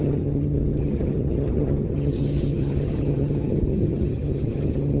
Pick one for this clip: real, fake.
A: fake